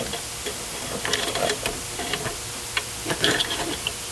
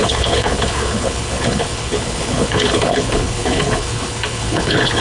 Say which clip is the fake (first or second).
second